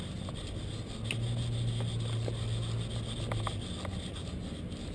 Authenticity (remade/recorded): recorded